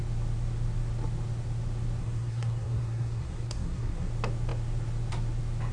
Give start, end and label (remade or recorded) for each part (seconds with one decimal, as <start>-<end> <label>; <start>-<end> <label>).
0.0-2.0 recorded; 2.0-4.1 remade; 4.1-5.7 recorded